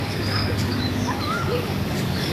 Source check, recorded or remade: remade